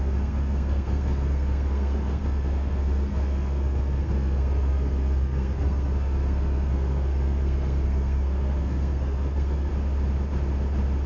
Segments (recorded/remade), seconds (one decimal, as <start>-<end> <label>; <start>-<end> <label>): 0.0-9.7 remade; 9.7-11.1 recorded